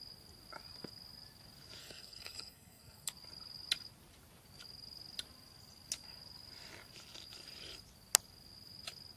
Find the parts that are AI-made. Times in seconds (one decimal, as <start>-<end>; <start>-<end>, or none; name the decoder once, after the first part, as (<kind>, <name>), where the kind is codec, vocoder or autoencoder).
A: 1.8-3.1 (codec, SNAC)